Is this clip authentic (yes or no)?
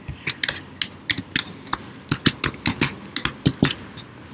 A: yes